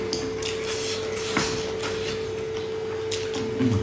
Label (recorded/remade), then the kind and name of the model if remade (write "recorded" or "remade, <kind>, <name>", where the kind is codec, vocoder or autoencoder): recorded